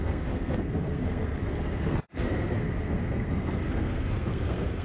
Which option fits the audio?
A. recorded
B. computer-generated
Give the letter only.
B